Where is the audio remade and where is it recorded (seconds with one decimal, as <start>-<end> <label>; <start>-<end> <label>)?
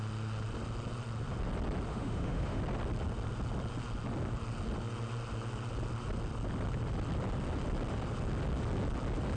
0.0-1.9 recorded; 1.9-2.6 remade; 2.6-9.4 recorded